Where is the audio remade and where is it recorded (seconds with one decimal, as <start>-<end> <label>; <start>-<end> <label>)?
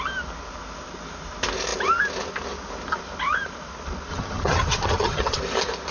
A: 0.0-4.1 recorded; 4.1-5.4 remade; 5.4-5.9 recorded